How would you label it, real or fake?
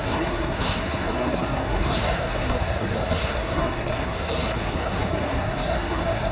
fake